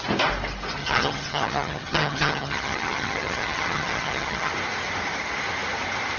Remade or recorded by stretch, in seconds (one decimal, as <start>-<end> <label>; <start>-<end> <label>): 0.0-0.8 recorded; 0.8-4.5 remade; 4.5-6.2 recorded